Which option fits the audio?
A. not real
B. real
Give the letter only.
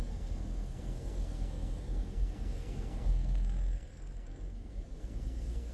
A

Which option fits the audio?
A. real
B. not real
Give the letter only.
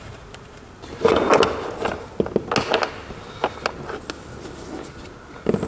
A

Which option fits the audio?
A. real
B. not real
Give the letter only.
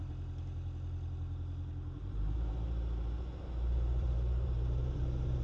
B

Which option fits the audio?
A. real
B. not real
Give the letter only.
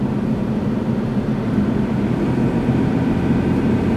A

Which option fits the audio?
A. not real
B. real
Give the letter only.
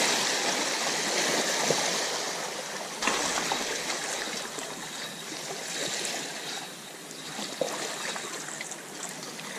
B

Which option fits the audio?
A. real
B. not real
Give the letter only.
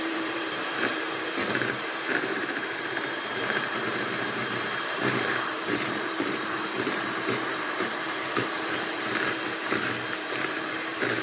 B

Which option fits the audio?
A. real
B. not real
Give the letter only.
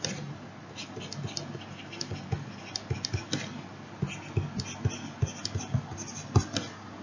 A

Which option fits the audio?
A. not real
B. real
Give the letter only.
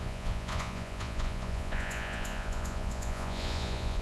A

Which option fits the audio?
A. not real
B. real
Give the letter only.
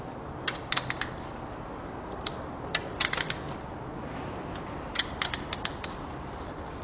B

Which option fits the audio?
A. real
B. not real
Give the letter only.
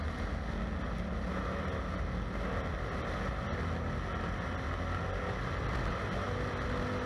A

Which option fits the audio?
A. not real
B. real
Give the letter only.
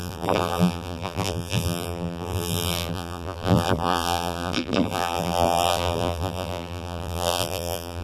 A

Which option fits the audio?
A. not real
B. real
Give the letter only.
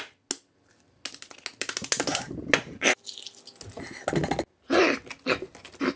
B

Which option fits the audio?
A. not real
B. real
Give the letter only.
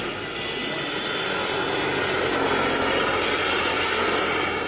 B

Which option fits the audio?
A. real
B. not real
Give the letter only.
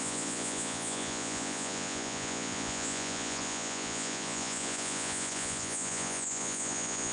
B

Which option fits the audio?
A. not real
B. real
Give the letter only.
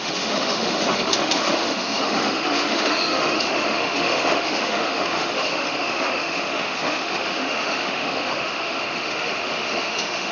A